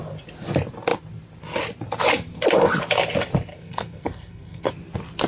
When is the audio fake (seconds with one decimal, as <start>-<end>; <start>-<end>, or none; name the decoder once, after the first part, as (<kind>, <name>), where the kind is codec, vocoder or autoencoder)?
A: 3.5-4.7 (codec, SNAC)